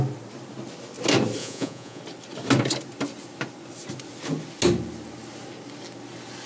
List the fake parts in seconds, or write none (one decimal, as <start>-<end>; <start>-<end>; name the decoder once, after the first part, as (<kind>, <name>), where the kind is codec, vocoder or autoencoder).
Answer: 1.4-2.0 (vocoder, Vocos)